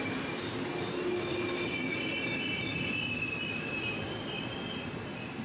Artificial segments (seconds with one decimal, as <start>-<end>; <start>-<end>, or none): none